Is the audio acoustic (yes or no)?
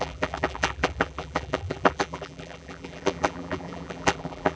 no